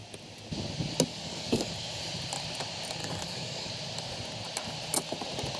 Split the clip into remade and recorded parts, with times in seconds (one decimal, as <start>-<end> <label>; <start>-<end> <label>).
0.0-1.1 recorded; 1.1-1.7 remade; 1.7-3.0 recorded; 3.0-3.7 remade; 3.7-5.6 recorded